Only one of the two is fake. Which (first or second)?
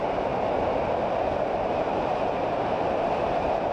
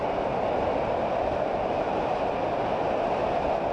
first